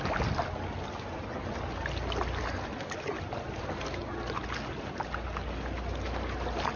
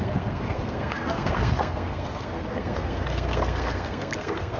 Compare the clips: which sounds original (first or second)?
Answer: first